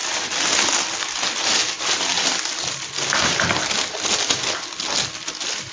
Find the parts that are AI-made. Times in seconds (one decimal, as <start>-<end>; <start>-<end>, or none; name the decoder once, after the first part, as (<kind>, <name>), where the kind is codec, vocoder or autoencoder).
none